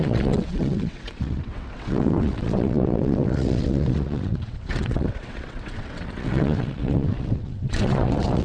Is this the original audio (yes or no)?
no